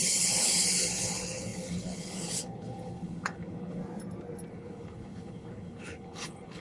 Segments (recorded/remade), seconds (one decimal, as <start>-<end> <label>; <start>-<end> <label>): 0.0-3.8 remade; 3.8-4.5 recorded; 4.5-6.6 remade